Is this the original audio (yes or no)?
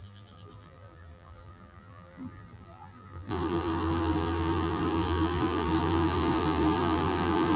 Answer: no